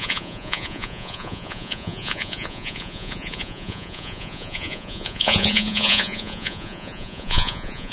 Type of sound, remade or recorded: remade